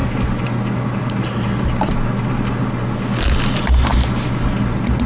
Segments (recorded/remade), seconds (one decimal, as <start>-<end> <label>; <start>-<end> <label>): 0.0-1.6 remade; 1.6-5.1 recorded